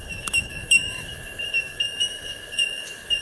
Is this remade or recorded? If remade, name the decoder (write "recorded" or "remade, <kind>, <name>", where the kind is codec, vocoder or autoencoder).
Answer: remade, autoencoder, DAC-VAE